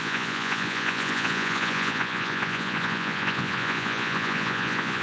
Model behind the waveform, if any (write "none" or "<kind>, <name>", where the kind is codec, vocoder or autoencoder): vocoder, Vocos